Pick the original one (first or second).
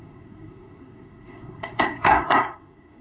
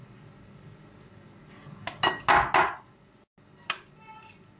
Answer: second